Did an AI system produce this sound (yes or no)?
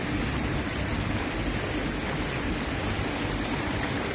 no